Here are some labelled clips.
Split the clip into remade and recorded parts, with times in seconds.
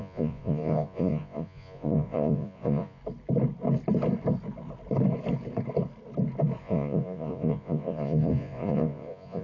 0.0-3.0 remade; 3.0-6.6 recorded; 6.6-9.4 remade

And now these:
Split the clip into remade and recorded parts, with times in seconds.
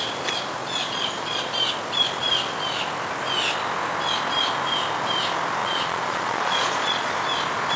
0.0-0.6 recorded; 0.6-1.4 remade; 1.4-5.6 recorded; 5.6-7.1 remade; 7.1-7.8 recorded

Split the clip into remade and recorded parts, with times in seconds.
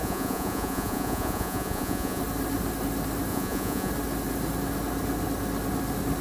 0.0-2.2 remade; 2.2-3.3 recorded; 3.3-3.9 remade; 3.9-6.2 recorded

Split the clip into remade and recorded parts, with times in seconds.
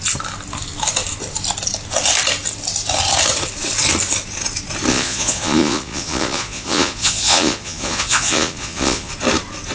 0.0-4.9 recorded; 4.9-9.1 remade; 9.1-9.7 recorded